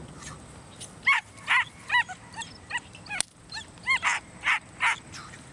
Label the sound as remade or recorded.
recorded